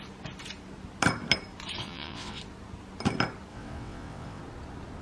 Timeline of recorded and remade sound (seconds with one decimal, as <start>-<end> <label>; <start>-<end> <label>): 0.0-1.8 recorded; 1.8-2.4 remade; 2.4-3.5 recorded; 3.5-4.4 remade; 4.4-5.0 recorded